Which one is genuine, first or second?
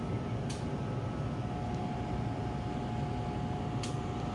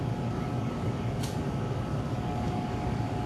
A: first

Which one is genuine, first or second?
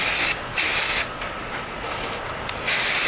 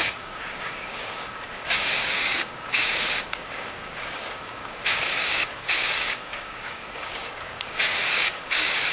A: first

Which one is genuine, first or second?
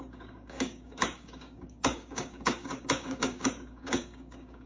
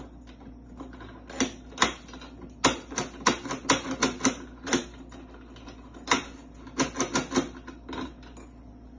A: second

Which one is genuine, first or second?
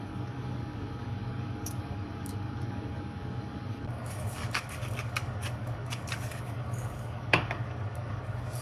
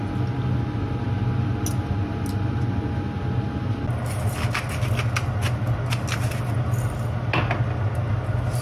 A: second